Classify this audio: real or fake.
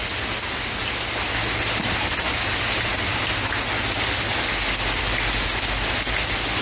real